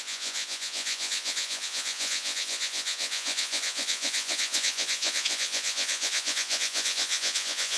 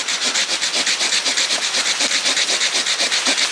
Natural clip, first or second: second